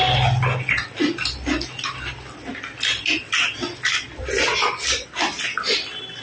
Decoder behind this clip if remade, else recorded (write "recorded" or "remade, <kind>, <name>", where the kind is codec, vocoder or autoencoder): recorded